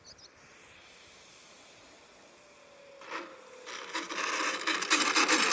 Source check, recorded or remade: recorded